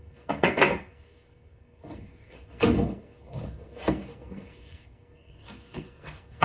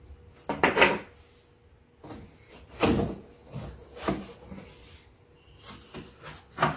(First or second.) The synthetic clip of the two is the first